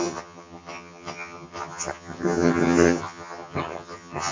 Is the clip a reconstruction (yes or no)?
yes